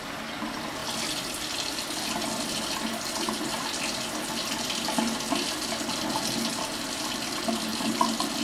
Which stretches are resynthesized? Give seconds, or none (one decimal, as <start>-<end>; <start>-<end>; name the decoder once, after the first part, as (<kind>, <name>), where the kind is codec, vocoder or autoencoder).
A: none